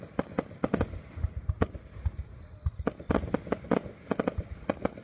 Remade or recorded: recorded